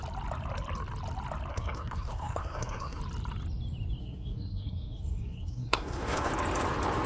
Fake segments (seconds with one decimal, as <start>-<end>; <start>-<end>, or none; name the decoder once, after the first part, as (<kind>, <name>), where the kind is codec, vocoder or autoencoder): 1.5-3.0 (codec, SNAC); 4.0-6.3